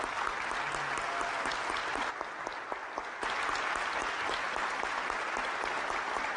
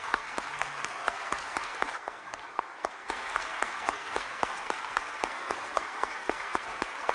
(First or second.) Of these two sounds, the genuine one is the first